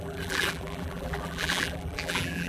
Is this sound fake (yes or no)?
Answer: yes